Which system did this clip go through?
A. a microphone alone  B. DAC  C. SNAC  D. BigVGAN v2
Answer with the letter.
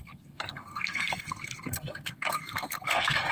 C